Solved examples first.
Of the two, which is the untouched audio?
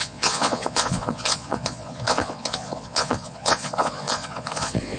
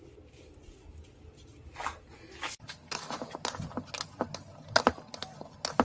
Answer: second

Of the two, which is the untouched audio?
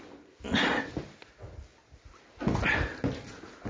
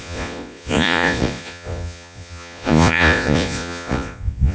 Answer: first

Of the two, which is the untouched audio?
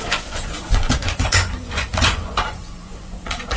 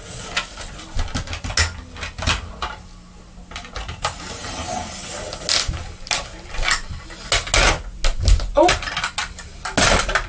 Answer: second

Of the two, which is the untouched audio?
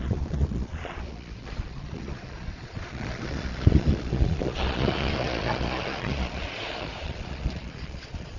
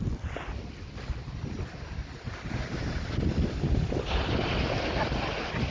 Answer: second